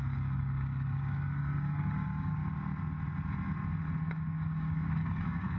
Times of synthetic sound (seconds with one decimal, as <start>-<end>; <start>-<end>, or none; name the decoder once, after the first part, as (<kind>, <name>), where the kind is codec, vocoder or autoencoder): 0.0-2.4 (codec, DAC); 4.1-5.6